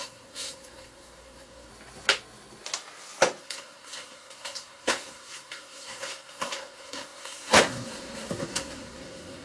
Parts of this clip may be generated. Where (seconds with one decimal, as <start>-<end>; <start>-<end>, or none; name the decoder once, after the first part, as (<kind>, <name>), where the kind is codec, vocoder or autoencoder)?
0.0-1.7 (codec, SNAC); 3.4-9.4